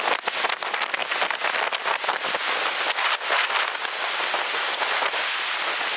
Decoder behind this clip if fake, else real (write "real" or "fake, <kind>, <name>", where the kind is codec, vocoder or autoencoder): real